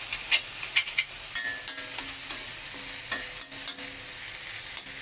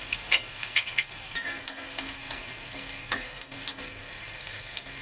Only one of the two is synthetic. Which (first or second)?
second